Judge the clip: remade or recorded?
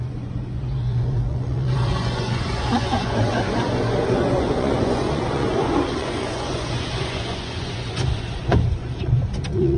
remade